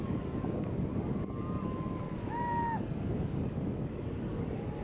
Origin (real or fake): fake